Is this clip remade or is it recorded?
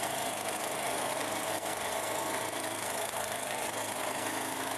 remade